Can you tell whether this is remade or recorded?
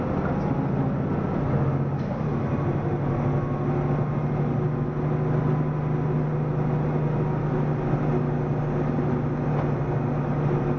recorded